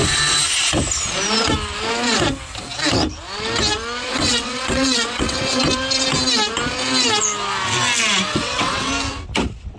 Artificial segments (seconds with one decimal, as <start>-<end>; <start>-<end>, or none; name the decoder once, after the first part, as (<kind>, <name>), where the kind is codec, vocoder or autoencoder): 4.1-5.6 (vocoder, WaveNeXt); 8.3-8.9